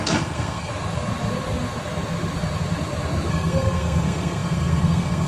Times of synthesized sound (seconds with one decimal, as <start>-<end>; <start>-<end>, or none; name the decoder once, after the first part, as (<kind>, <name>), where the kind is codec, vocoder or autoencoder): 0.0-0.7 (codec, SNAC); 3.3-5.3